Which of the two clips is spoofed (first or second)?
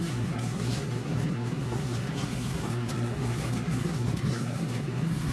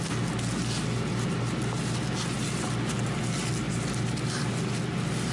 first